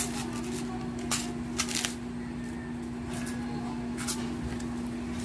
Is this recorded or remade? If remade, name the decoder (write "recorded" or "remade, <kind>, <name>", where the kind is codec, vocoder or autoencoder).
recorded